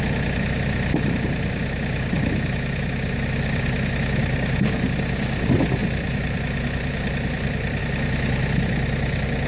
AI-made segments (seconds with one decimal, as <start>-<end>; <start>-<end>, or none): 5.8-7.8